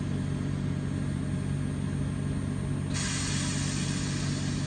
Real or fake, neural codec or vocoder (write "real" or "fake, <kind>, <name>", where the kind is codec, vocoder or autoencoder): real